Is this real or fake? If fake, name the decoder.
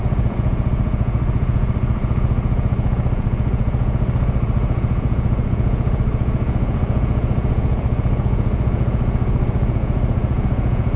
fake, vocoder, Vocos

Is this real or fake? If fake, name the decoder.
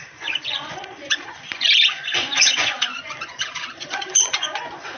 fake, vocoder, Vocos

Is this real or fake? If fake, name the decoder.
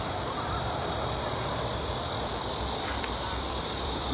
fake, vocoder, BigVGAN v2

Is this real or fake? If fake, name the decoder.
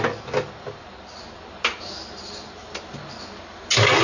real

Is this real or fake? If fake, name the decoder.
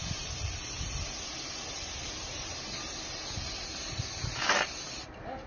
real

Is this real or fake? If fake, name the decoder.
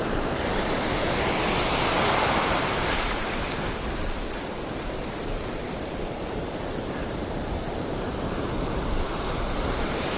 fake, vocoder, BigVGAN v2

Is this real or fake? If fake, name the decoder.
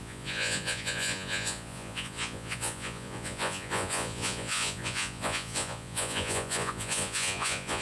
fake, vocoder, Vocos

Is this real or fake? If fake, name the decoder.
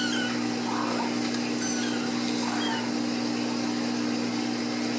real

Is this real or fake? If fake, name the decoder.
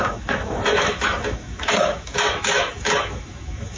fake, autoencoder, DAC-VAE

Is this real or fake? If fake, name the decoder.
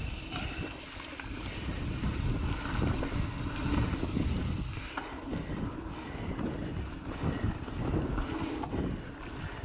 real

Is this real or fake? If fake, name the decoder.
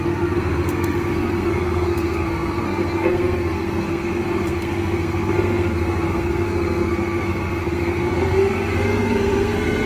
fake, codec, SNAC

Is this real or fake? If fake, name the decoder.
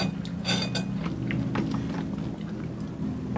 real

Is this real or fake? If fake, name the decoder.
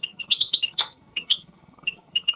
fake, codec, SNAC